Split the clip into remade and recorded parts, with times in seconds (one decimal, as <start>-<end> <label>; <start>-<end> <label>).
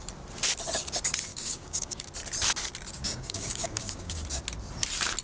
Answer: 0.0-1.3 recorded; 1.3-2.1 remade; 2.1-2.9 recorded; 2.9-4.2 remade; 4.2-5.2 recorded